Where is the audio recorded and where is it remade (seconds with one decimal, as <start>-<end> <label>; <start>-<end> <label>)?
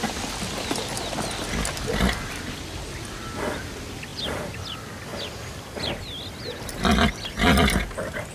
0.0-4.1 recorded; 4.1-4.6 remade; 4.6-8.3 recorded